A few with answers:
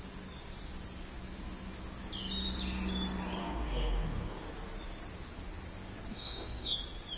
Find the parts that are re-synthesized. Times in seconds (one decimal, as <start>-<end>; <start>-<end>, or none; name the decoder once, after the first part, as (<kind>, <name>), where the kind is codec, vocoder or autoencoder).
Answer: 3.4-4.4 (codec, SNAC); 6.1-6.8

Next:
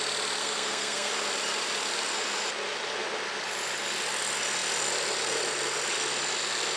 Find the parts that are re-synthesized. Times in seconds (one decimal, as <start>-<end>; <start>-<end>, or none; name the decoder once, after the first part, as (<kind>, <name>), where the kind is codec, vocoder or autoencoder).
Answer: 0.4-1.1 (codec, SNAC)

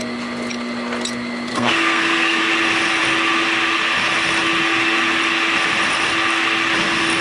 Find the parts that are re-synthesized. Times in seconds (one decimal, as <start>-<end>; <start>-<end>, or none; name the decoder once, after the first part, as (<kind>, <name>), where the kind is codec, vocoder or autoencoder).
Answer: 1.5-2.4 (codec, SNAC)

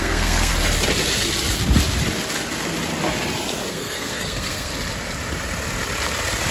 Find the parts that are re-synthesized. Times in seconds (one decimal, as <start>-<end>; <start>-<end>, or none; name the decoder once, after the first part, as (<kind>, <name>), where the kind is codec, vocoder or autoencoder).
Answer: 0.0-0.5 (codec, SNAC); 3.7-4.7

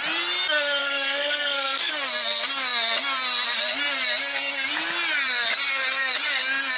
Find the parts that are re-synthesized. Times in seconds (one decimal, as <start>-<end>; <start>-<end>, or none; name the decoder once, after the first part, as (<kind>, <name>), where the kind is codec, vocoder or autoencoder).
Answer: 0.8-1.9 (codec, SNAC)